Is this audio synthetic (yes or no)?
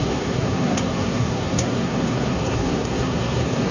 yes